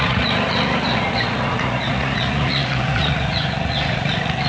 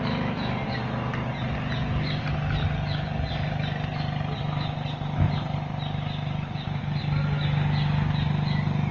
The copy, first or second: first